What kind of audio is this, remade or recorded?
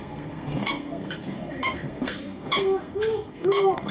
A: remade